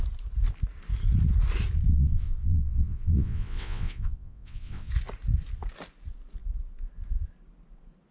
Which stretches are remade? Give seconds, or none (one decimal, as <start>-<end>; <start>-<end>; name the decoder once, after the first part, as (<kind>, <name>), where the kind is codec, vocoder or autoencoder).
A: 1.9-4.9 (vocoder, WaveNeXt)